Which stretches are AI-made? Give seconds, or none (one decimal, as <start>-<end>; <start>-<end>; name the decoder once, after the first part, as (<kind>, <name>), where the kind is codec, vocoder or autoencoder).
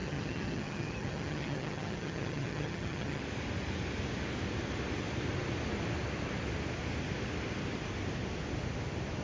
0.0-3.2 (vocoder, HiFi-GAN)